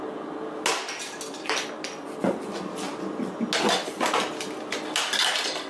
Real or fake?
real